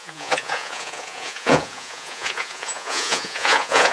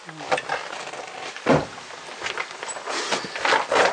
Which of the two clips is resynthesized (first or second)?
first